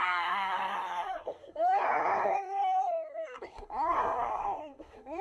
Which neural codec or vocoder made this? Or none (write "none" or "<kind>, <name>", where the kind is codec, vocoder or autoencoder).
codec, SNAC